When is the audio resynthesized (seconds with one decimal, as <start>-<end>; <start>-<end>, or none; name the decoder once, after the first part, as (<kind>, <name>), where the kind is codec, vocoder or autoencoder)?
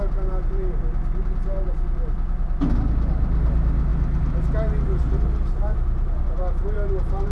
none